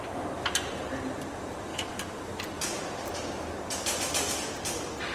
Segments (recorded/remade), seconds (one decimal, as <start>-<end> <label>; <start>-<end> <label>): 0.0-5.1 recorded